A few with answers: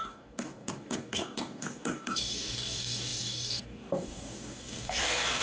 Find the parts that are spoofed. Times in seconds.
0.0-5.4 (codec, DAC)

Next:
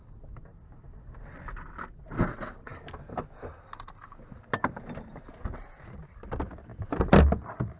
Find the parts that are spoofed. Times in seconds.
none

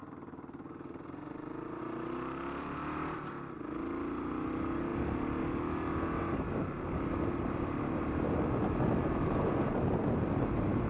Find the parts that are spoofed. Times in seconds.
none

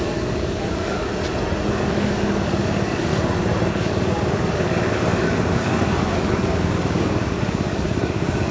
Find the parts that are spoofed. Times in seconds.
0.0-1.1 (codec, DAC); 1.7-3.1; 3.7-8.5

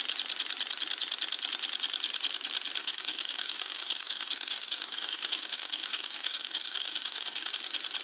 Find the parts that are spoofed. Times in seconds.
2.8-7.5 (codec, DAC)

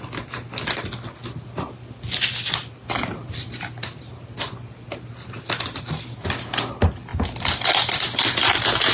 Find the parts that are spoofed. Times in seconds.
none

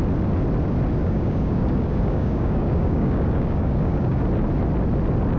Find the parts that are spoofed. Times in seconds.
1.0-4.2 (codec, DAC)